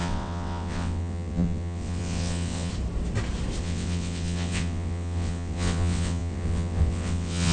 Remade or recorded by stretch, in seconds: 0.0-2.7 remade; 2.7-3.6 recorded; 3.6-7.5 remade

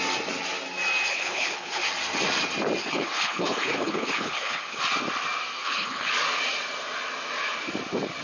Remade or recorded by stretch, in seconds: 0.0-1.1 recorded; 1.1-1.8 remade; 1.8-2.8 recorded; 2.8-4.8 remade; 4.8-5.6 recorded; 5.6-6.1 remade; 6.1-8.2 recorded